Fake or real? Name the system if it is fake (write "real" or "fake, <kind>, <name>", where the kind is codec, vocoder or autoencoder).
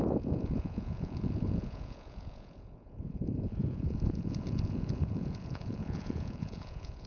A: fake, vocoder, Vocos